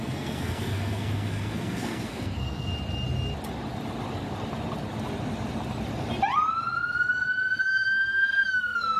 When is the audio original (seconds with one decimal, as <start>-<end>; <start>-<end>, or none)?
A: 2.7-7.6